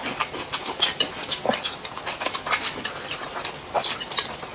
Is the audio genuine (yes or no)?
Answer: yes